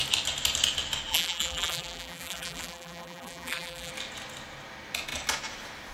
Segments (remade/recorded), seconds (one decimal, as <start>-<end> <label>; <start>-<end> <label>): 0.0-1.1 recorded; 1.1-3.9 remade; 3.9-5.9 recorded